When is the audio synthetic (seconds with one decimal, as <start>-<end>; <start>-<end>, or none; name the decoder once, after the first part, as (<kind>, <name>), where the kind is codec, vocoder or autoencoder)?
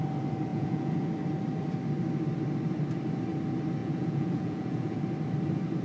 0.5-1.1 (vocoder, Vocos); 3.8-5.0